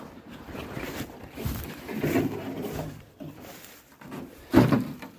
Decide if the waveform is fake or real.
fake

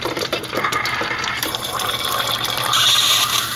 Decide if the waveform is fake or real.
fake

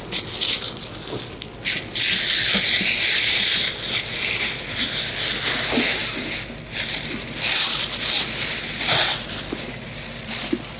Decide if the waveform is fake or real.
real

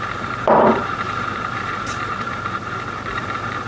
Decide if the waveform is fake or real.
fake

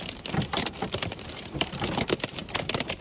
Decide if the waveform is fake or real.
fake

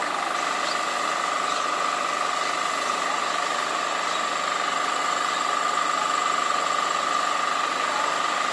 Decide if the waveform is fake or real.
real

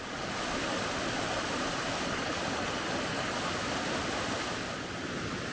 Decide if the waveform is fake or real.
fake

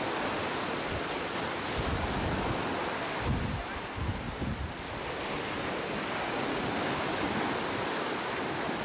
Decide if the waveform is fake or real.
real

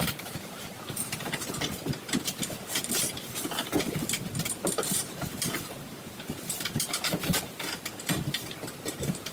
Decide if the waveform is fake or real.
fake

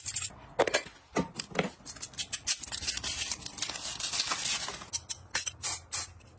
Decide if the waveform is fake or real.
real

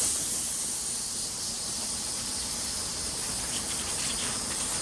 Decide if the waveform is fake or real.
fake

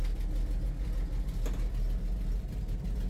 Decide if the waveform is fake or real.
real